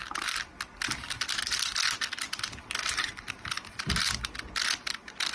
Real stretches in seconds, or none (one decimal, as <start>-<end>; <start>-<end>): 0.0-5.3